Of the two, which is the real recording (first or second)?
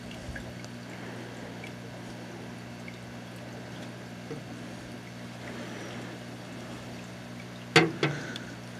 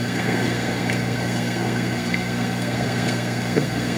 first